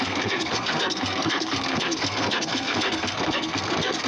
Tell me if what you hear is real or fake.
fake